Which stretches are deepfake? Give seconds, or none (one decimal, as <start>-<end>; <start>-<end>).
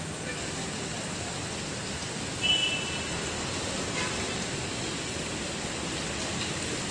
none